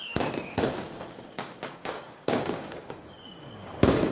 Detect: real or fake fake